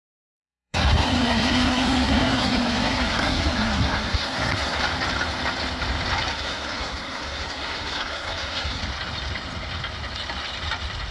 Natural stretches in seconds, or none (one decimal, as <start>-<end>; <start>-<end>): 4.8-6.3; 8.8-11.1